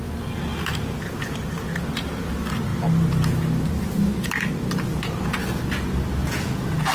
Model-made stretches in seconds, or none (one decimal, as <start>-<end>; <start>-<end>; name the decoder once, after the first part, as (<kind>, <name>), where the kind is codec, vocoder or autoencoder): 6.2-6.9 (vocoder, Vocos)

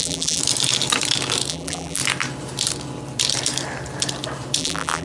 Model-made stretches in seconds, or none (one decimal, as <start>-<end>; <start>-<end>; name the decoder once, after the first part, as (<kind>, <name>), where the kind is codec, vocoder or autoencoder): 0.0-0.4 (vocoder, BigVGAN v2); 1.5-2.0; 4.6-5.0

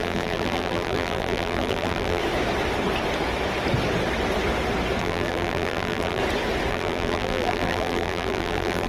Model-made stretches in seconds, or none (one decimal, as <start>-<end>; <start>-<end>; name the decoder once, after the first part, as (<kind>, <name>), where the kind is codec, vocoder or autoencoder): 0.0-2.2 (vocoder, BigVGAN v2); 5.0-6.2; 6.7-8.9

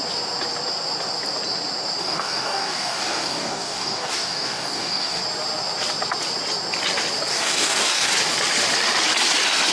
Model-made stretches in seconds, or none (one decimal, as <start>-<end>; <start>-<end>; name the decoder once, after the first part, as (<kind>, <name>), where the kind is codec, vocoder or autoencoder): 2.0-5.2 (codec, DAC); 7.3-8.1

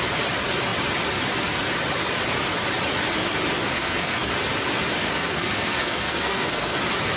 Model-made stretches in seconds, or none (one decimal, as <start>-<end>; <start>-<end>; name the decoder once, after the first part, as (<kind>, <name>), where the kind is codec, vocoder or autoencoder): 3.7-4.3 (codec, SNAC); 5.0-6.8

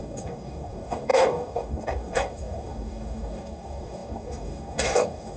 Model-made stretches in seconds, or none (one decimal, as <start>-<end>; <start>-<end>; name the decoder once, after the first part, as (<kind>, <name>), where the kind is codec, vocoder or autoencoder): 0.0-5.4 (codec, DAC)

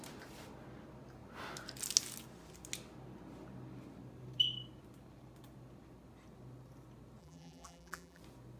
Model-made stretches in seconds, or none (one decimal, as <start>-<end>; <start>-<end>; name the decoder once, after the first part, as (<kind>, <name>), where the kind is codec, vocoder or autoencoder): 7.2-8.2 (vocoder, BigVGAN v2)